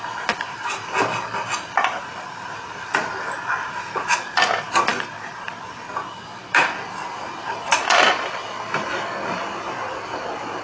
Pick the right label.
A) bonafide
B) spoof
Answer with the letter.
A